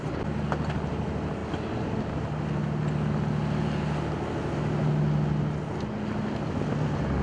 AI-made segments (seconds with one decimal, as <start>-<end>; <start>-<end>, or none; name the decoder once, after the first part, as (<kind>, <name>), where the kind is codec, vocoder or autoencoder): none